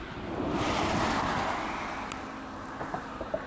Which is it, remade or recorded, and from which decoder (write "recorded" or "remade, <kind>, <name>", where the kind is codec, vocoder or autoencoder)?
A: recorded